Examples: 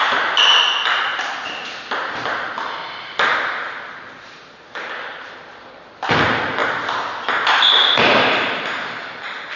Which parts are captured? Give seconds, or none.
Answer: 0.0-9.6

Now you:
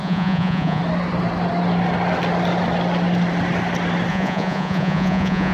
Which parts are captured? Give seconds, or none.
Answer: 0.8-4.1

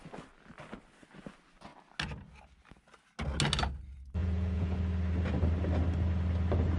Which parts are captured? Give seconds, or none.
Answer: 0.0-4.2; 4.8-6.8